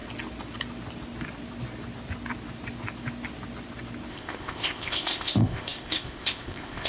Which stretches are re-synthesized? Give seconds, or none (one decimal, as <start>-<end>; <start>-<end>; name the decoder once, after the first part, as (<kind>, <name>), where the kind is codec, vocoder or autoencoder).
4.1-6.9 (codec, ZipCodec)